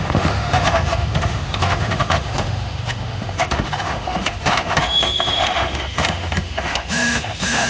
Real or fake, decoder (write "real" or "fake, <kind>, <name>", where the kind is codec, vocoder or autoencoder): fake, autoencoder, DAC-VAE